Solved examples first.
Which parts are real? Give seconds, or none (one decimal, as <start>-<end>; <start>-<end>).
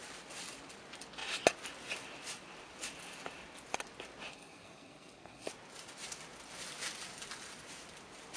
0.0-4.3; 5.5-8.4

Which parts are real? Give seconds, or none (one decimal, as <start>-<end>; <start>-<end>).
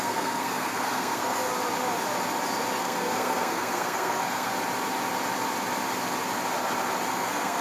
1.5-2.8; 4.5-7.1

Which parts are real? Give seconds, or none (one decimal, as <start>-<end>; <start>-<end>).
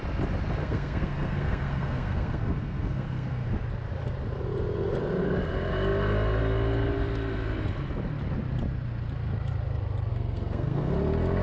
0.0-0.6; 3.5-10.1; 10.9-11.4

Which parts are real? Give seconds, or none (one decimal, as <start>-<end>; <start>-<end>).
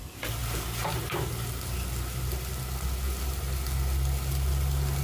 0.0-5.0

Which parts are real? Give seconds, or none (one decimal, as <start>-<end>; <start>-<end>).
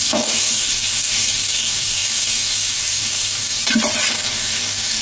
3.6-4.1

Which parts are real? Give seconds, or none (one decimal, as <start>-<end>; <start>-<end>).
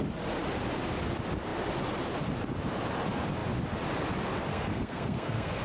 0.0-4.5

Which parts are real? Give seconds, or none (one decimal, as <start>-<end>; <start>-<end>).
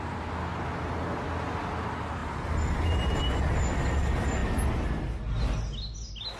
0.0-6.4